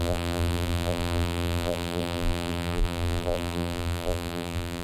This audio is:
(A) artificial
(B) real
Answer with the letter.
A